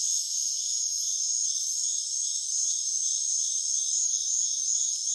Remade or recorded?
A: recorded